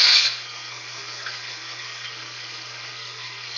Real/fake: fake